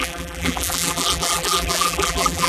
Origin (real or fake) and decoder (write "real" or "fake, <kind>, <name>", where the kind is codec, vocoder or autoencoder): fake, vocoder, BigVGAN v2